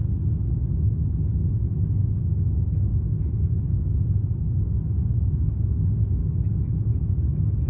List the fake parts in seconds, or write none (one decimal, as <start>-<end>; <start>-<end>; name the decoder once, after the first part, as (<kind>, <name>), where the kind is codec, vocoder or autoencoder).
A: 2.1-2.9 (codec, DAC); 4.6-6.2; 7.2-7.7